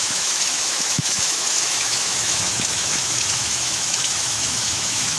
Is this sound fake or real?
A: fake